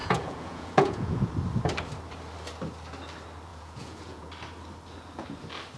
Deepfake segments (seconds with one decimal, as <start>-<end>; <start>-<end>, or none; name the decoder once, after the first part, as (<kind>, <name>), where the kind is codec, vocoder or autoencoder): 0.0-1.3 (vocoder, Vocos); 3.5-4.3